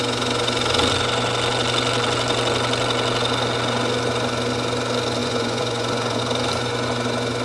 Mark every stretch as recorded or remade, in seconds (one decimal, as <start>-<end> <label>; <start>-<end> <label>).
0.0-5.2 recorded; 5.2-6.2 remade; 6.2-7.4 recorded

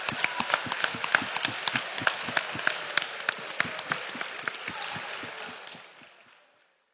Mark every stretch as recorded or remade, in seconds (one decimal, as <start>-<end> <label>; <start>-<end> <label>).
0.0-6.9 recorded

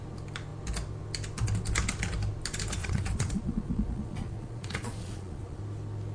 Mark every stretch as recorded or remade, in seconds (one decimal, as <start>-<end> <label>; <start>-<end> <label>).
0.0-2.8 recorded; 2.8-5.6 remade; 5.6-6.1 recorded

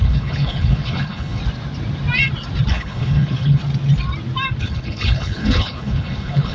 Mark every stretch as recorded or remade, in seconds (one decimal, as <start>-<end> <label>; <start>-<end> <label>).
0.0-1.4 remade; 1.4-2.7 recorded; 2.7-3.6 remade; 3.6-4.6 recorded; 4.6-6.5 remade

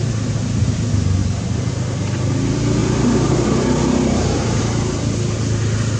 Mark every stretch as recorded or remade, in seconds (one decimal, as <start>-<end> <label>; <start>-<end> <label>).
0.0-1.2 recorded; 1.2-1.7 remade; 1.7-2.8 recorded; 2.8-4.6 remade; 4.6-6.0 recorded

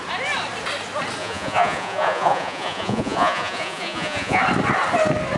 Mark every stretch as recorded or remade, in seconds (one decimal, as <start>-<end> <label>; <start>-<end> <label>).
0.0-1.2 recorded; 1.2-4.4 remade; 4.4-5.4 recorded

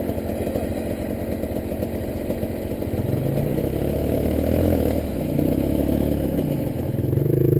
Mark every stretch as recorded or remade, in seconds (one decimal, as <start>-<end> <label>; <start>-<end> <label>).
0.0-3.5 recorded; 3.5-7.6 remade